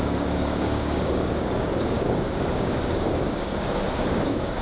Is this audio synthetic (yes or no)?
yes